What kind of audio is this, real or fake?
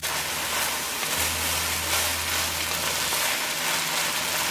real